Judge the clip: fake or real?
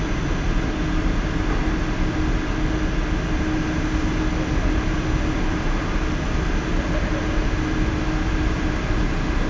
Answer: real